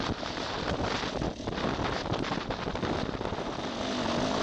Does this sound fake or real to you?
real